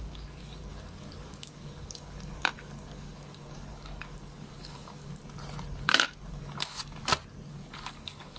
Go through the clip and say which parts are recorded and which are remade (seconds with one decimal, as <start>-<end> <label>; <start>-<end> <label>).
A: 0.0-5.2 remade; 5.2-5.8 recorded; 5.8-7.0 remade; 7.0-7.5 recorded; 7.5-8.4 remade